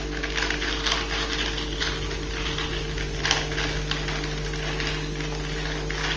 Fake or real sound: real